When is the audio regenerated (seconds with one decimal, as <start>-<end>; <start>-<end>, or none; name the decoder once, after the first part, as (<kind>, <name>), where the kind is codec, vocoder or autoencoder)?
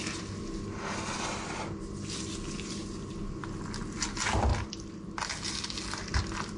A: none